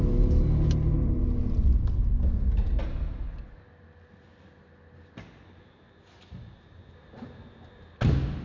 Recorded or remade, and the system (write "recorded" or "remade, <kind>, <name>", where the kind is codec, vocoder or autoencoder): recorded